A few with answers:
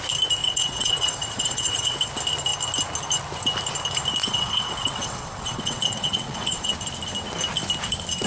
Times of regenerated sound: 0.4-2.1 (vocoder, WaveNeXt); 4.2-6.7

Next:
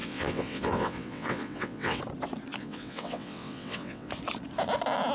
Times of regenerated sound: 0.0-2.0 (vocoder, WaveNeXt); 2.6-4.1

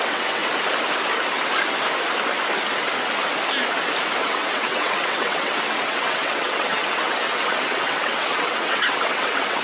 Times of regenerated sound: 0.0-0.4 (vocoder, WaveNeXt); 4.2-9.6

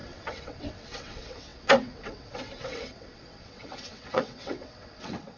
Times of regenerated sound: 0.0-5.4 (vocoder, WaveNeXt)